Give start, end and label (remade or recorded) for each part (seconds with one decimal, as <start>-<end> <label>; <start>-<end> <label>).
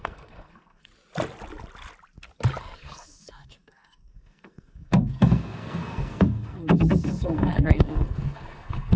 0.0-0.9 remade; 0.9-2.6 recorded; 2.6-9.0 remade